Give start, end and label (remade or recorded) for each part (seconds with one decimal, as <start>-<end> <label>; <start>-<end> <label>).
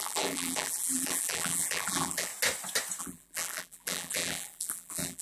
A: 0.0-2.3 remade; 2.3-3.0 recorded; 3.0-5.2 remade